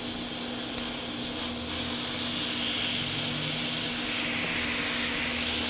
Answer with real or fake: real